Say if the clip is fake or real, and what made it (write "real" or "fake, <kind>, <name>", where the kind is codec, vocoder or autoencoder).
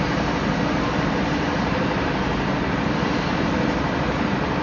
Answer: fake, vocoder, BigVGAN v2